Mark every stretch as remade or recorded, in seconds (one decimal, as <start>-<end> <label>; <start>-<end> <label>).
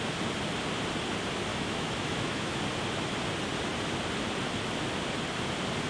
0.0-1.5 recorded; 1.5-2.6 remade; 2.6-5.9 recorded